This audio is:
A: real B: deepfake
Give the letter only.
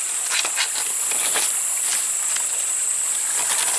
A